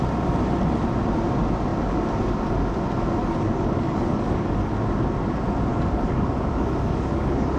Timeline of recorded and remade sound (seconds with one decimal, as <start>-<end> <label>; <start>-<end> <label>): 0.0-3.2 recorded; 3.2-4.7 remade; 4.7-5.7 recorded; 5.7-7.6 remade